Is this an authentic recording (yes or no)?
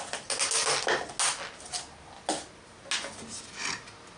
yes